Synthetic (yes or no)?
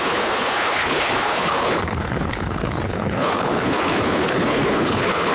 yes